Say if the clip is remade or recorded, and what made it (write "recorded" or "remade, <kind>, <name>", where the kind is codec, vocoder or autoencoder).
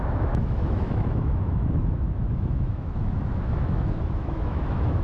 remade, autoencoder, DAC-VAE